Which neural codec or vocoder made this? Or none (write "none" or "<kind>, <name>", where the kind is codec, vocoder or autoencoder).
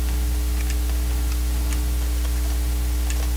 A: none